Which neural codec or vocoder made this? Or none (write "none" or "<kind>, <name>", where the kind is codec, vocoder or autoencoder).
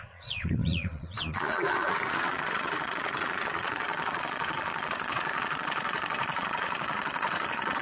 vocoder, Vocos